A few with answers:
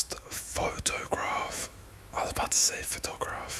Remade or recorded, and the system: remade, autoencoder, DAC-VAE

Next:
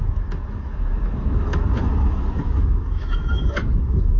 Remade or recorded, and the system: remade, autoencoder, DAC-VAE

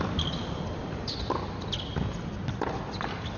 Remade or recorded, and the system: recorded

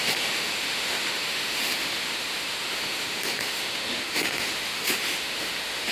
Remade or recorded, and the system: remade, autoencoder, DAC-VAE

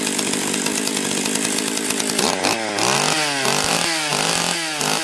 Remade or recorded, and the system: recorded